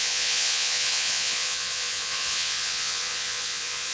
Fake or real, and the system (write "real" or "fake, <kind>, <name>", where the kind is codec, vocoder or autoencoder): fake, vocoder, Vocos